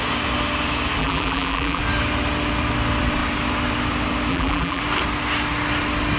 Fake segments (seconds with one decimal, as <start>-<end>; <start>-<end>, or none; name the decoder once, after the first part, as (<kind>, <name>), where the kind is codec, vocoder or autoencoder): 1.0-1.8 (vocoder, BigVGAN v2); 4.3-4.8